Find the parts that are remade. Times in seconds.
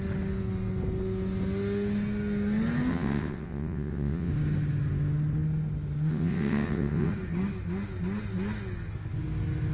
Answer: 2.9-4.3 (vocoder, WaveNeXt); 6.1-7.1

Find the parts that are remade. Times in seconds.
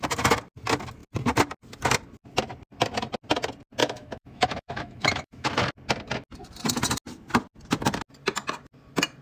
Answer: 3.8-5.5 (autoencoder, DAC-VAE)